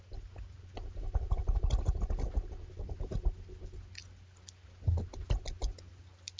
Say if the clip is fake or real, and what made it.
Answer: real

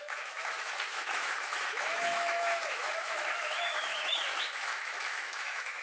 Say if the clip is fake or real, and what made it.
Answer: fake, autoencoder, DAC-VAE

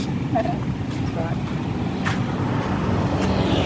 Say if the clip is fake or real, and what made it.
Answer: real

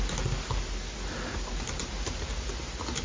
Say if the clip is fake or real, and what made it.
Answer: real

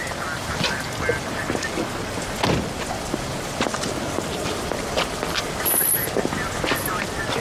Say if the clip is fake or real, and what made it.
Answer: real